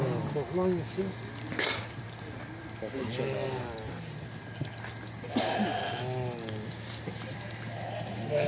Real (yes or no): yes